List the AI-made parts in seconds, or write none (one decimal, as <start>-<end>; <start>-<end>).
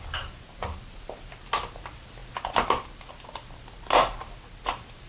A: none